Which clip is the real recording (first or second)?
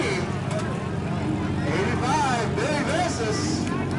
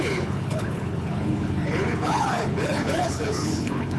first